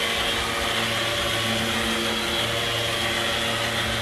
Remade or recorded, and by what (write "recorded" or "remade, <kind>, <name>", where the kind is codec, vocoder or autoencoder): recorded